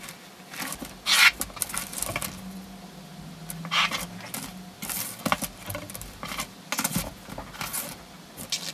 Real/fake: real